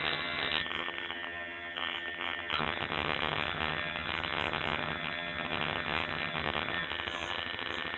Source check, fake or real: fake